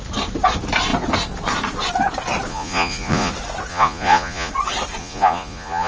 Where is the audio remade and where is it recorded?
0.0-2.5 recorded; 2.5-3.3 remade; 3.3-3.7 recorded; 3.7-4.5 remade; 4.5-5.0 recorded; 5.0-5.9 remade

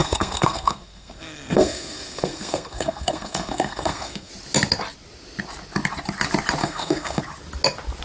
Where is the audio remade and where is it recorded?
0.0-4.3 remade; 4.3-6.6 recorded; 6.6-7.2 remade; 7.2-8.0 recorded

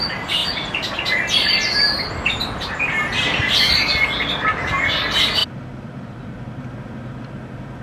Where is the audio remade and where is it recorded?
0.0-5.4 recorded; 5.4-6.6 remade; 6.6-7.8 recorded

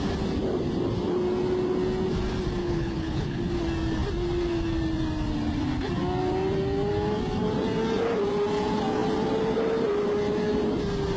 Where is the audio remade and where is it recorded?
0.0-2.6 recorded; 2.6-3.4 remade; 3.4-11.2 recorded

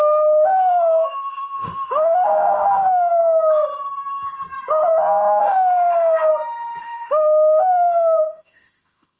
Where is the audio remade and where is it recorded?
0.0-3.2 remade; 3.2-5.4 recorded; 5.4-6.3 remade; 6.3-6.8 recorded; 6.8-9.2 remade

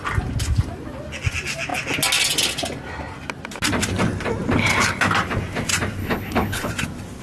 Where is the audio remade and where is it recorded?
0.0-6.0 recorded; 6.0-6.7 remade; 6.7-7.2 recorded